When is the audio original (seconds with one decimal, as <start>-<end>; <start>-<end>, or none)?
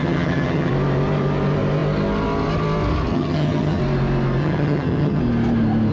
0.7-3.1; 3.8-4.4; 5.2-5.9